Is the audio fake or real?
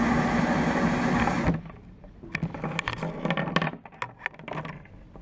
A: real